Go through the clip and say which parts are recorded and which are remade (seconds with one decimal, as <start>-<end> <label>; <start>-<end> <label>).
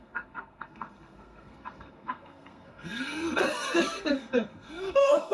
0.0-5.3 remade